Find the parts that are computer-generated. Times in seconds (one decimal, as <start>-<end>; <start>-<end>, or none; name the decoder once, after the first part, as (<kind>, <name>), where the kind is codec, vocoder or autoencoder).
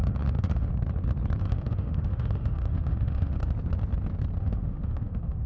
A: 0.0-0.7 (autoencoder, DAC-VAE); 1.4-3.4; 4.4-5.5